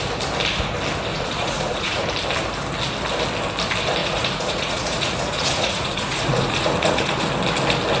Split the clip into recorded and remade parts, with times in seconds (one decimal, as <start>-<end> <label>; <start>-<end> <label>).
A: 0.0-1.1 recorded; 1.1-2.0 remade; 2.0-4.0 recorded; 4.0-7.2 remade; 7.2-8.0 recorded